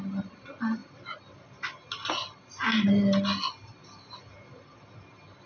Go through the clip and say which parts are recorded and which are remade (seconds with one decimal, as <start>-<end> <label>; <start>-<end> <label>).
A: 0.0-5.5 recorded